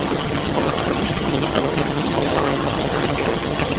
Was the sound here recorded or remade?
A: remade